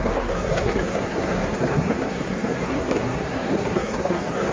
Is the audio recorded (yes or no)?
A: no